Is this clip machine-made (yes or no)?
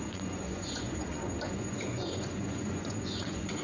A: yes